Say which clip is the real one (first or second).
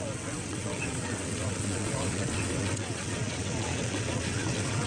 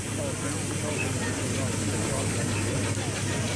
second